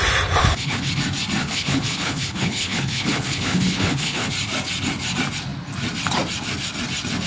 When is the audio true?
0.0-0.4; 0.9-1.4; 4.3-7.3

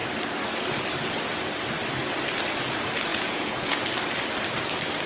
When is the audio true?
0.0-3.1; 3.8-5.1

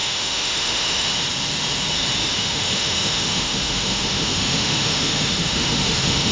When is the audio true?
1.1-2.2

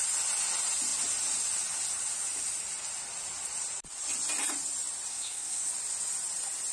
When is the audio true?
0.0-5.1; 5.7-6.7

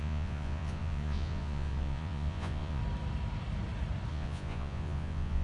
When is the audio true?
2.8-4.1

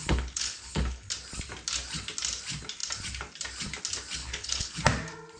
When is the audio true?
1.1-4.2; 4.8-5.4

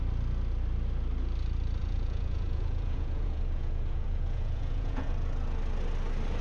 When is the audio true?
0.0-1.8; 5.1-6.4